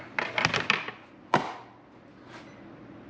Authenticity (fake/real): real